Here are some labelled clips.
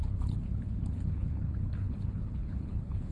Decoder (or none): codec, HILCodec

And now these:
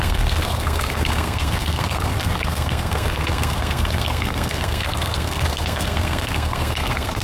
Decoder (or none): codec, SNAC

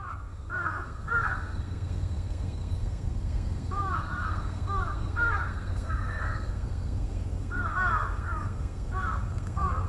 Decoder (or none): codec, SNAC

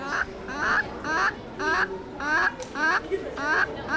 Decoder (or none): none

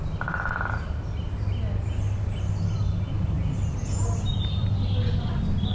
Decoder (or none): none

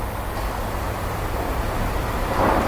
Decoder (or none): none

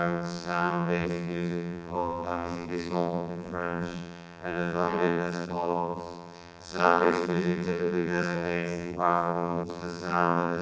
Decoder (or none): vocoder, BigVGAN v2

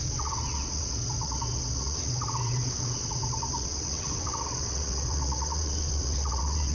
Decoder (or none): vocoder, WaveNeXt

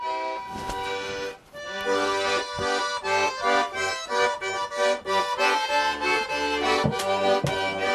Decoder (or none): none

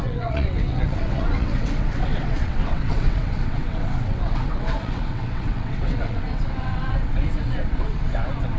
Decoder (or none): vocoder, WaveNeXt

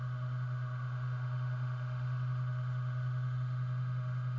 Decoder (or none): autoencoder, DAC-VAE